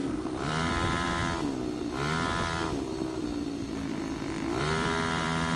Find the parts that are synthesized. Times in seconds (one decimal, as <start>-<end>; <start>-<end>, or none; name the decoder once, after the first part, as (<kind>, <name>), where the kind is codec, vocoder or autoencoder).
0.0-1.2 (vocoder, BigVGAN v2); 4.6-5.6